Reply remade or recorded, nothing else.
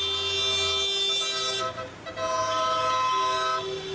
recorded